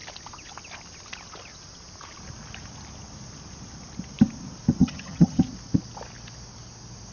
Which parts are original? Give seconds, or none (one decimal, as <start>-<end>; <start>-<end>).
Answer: 0.0-4.8; 5.4-7.1